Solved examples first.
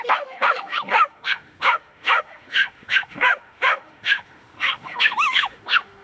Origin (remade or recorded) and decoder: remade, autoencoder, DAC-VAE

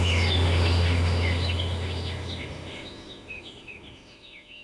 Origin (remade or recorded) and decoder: remade, autoencoder, DAC-VAE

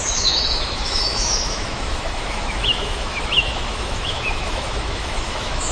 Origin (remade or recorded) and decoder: remade, autoencoder, DAC-VAE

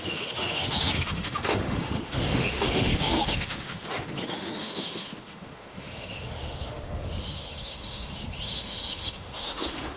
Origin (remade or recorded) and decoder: remade, autoencoder, DAC-VAE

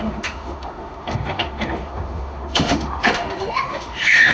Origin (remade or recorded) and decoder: remade, autoencoder, DAC-VAE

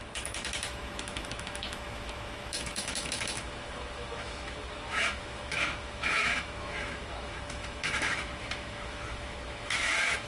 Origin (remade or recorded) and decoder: remade, autoencoder, DAC-VAE